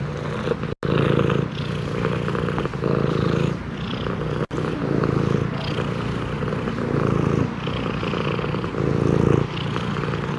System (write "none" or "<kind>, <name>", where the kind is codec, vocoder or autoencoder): none